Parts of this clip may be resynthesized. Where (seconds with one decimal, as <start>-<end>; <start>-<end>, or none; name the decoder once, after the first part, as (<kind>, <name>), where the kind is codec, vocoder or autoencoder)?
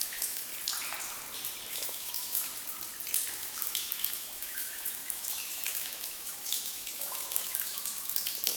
0.0-0.5 (autoencoder, DAC-VAE); 1.7-2.5; 3.3-8.6